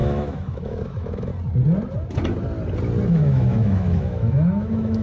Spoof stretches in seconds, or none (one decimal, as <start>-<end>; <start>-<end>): 0.0-1.3; 3.1-5.0